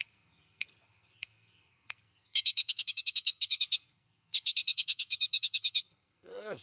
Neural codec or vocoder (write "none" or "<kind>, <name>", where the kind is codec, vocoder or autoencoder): codec, SNAC